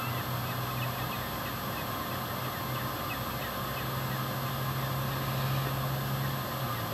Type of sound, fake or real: real